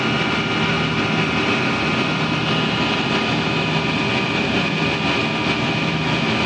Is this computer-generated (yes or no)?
no